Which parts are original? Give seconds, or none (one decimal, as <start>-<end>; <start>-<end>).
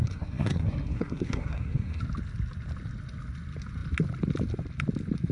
2.0-5.3